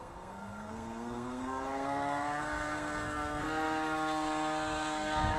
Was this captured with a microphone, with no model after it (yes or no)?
no